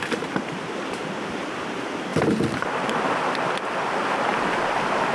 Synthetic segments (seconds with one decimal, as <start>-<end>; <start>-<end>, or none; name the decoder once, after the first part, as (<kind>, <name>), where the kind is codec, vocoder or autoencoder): none